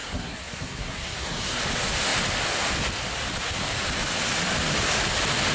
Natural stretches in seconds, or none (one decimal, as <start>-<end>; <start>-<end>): 1.6-5.5